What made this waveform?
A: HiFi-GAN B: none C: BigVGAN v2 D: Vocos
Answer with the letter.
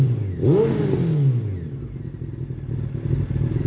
B